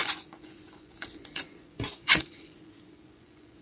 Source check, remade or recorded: remade